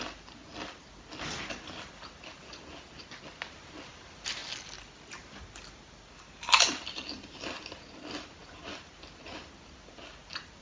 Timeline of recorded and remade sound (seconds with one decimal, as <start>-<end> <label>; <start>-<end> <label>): 0.0-10.6 recorded

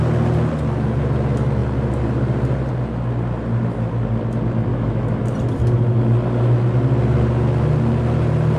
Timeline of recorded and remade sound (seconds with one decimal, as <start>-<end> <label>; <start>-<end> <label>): 0.0-4.7 recorded; 4.7-5.2 remade; 5.2-8.6 recorded

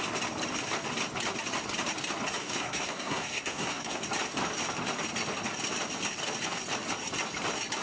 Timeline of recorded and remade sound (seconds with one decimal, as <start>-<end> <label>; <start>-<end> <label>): 0.0-2.4 recorded; 2.4-4.0 remade; 4.0-7.8 recorded

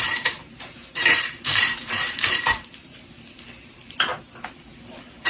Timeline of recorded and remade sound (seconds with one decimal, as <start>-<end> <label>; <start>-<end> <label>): 0.0-4.1 remade; 4.1-4.7 recorded; 4.7-5.3 remade

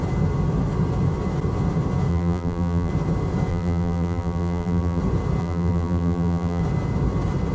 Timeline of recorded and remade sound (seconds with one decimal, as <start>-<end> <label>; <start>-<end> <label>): 0.0-2.1 recorded; 2.1-2.9 remade; 2.9-3.5 recorded; 3.5-5.0 remade; 5.0-5.4 recorded; 5.4-6.6 remade; 6.6-7.5 recorded